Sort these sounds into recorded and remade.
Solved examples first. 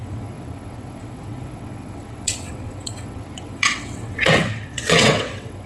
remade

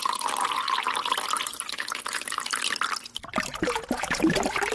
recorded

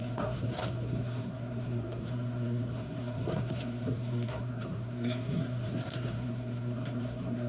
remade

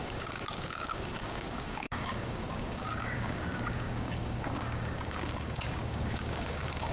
remade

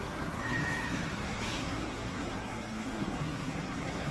remade